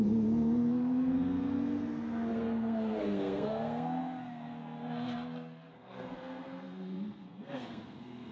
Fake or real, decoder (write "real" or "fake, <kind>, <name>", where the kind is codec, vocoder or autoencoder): fake, codec, SNAC